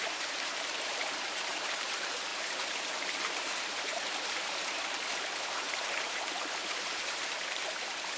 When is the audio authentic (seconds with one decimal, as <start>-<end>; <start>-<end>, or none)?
none